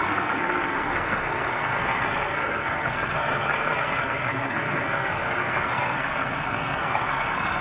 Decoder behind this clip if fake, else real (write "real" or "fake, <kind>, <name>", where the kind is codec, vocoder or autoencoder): fake, codec, SNAC